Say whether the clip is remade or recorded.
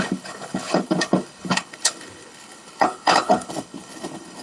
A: remade